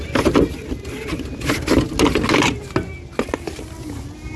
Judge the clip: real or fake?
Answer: real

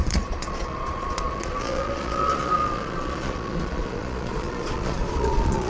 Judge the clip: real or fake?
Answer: fake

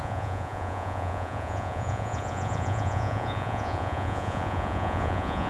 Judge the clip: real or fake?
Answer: fake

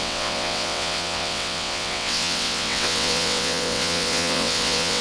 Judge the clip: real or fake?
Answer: fake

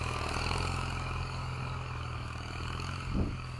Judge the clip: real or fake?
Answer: fake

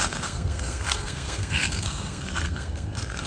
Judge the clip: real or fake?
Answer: fake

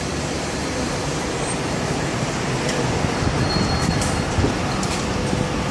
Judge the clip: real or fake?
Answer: real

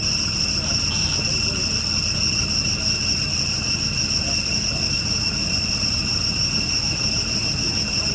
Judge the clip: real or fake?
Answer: real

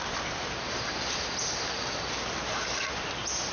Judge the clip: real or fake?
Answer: real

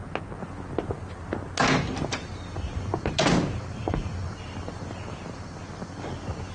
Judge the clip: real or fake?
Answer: real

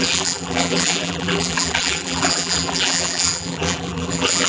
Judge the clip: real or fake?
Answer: fake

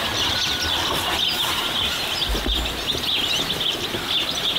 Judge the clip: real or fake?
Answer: real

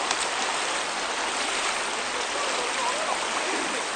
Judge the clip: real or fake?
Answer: real